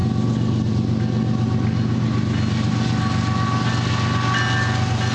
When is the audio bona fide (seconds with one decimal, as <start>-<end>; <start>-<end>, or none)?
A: 0.0-5.1